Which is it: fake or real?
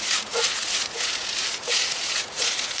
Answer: fake